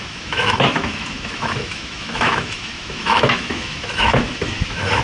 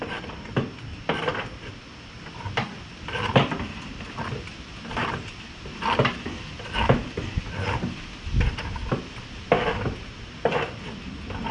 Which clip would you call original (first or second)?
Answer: second